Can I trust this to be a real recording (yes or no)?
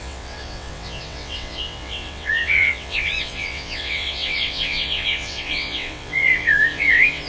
no